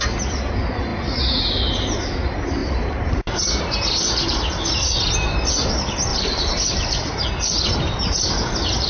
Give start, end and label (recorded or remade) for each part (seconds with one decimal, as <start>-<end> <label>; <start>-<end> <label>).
0.0-2.6 recorded; 2.6-3.6 remade; 3.6-6.1 recorded; 6.1-6.7 remade; 6.7-8.9 recorded